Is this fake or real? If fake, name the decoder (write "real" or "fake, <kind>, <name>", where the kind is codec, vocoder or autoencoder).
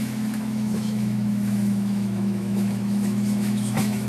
fake, autoencoder, DAC-VAE